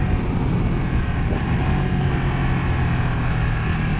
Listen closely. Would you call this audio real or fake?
real